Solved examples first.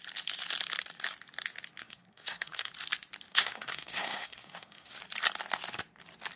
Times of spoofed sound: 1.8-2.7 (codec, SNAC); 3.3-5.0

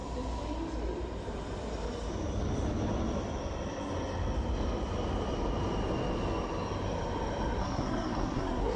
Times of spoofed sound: 7.6-8.8 (codec, SNAC)